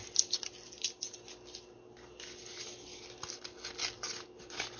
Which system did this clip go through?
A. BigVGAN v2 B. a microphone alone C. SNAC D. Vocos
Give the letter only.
B